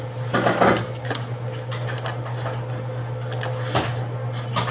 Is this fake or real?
real